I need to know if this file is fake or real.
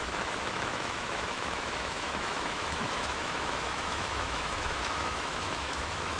fake